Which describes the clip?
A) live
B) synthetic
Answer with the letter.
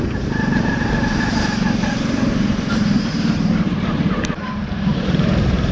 B